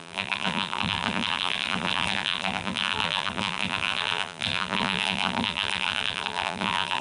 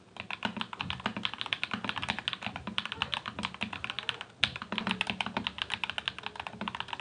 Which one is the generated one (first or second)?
first